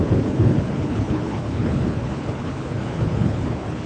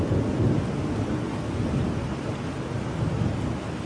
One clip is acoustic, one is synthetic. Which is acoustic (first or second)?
second